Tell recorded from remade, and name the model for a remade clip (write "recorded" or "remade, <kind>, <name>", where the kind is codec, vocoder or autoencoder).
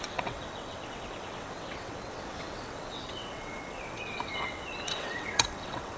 remade, vocoder, WaveNeXt